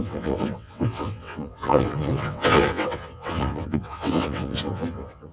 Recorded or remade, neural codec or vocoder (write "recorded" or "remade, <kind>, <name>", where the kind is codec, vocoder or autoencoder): remade, vocoder, WaveNeXt